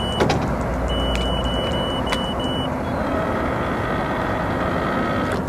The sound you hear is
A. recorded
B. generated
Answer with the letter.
A